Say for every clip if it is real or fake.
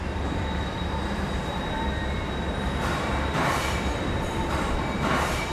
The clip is fake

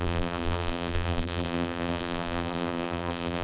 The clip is fake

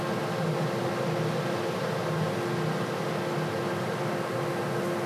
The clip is real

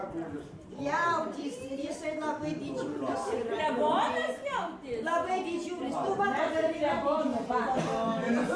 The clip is fake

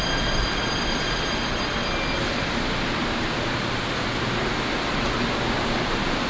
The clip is real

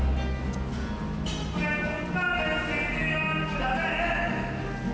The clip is real